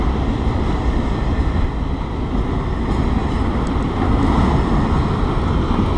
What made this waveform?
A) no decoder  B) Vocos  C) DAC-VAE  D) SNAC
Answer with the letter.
A